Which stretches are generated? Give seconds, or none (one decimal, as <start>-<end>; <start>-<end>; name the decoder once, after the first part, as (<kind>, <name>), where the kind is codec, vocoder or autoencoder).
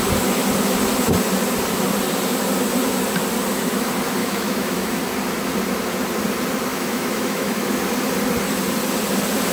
4.2-5.0 (autoencoder, DAC-VAE); 6.7-7.6